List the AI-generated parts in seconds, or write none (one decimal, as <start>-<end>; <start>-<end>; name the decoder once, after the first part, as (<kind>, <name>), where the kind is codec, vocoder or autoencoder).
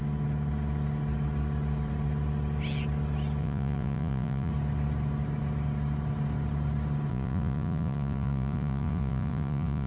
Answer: 3.4-4.5 (vocoder, Vocos); 7.1-9.9